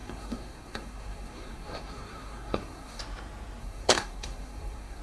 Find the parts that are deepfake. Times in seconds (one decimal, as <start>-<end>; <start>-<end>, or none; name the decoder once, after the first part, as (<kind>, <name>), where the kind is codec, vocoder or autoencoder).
0.0-3.0 (codec, SNAC); 3.6-5.0